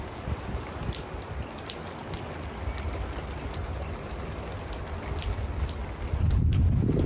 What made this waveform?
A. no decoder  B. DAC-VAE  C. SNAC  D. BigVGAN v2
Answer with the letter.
A